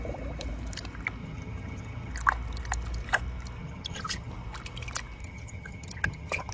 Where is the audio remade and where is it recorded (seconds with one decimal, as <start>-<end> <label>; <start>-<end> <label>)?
0.0-1.2 recorded; 1.2-2.1 remade; 2.1-3.6 recorded; 3.6-4.3 remade; 4.3-5.2 recorded; 5.2-6.5 remade